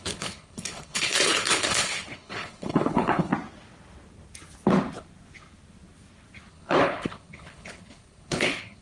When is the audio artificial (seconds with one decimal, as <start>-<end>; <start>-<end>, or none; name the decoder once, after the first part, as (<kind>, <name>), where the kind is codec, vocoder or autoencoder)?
0.0-3.3 (codec, HILCodec); 6.5-8.8